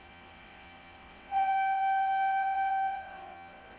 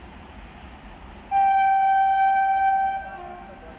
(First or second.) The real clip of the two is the second